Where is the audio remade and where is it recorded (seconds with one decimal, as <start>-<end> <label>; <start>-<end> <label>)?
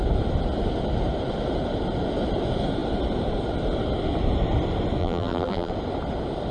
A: 0.0-5.0 recorded; 5.0-5.7 remade; 5.7-6.5 recorded